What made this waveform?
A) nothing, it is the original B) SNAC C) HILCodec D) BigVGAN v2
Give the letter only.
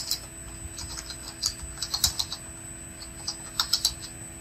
A